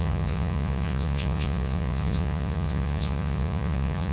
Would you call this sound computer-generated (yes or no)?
yes